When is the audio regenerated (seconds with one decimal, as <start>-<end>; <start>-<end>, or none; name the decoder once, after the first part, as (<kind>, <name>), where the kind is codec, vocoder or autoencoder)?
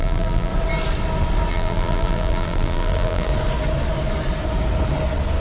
0.0-0.5 (vocoder, BigVGAN v2); 1.5-3.3